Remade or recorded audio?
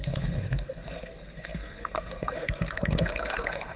remade